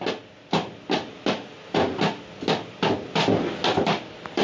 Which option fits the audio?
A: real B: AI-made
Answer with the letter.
A